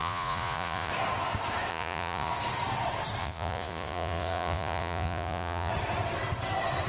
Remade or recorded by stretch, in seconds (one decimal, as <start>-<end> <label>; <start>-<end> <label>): 0.0-0.9 remade; 0.9-1.7 recorded; 1.7-2.3 remade; 2.3-3.2 recorded; 3.2-5.7 remade; 5.7-6.9 recorded